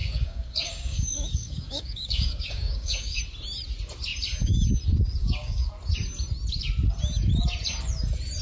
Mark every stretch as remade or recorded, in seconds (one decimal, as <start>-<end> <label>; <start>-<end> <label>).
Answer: 0.0-3.2 remade; 3.2-5.2 recorded; 5.2-5.7 remade; 5.7-8.4 recorded